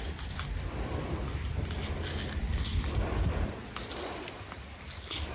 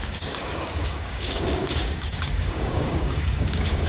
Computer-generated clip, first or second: second